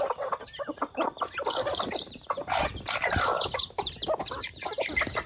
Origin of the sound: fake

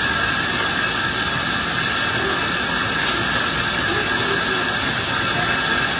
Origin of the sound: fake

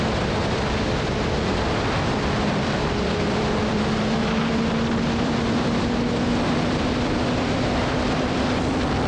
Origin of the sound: fake